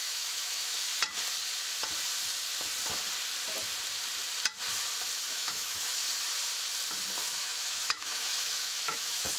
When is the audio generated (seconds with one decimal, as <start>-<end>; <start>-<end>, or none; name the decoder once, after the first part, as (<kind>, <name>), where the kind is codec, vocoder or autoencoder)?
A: 0.0-0.9 (autoencoder, DAC-VAE); 5.3-6.0; 7.2-9.4